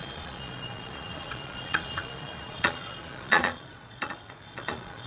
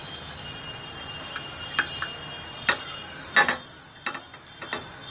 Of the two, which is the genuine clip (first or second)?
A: second